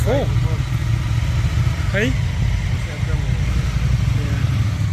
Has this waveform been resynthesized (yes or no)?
no